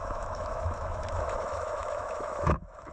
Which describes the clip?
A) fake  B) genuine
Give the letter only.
A